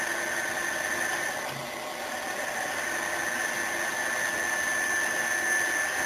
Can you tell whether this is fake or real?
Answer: real